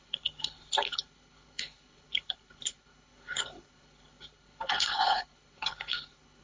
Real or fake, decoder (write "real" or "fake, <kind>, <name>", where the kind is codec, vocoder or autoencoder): fake, codec, HILCodec